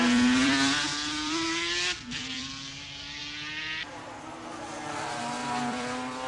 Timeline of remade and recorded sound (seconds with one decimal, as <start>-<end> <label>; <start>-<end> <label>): 0.0-3.2 remade; 3.2-3.8 recorded; 3.8-6.3 remade